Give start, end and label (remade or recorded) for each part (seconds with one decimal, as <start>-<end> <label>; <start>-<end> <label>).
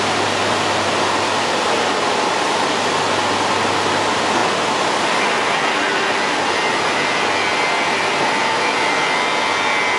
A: 0.0-10.0 recorded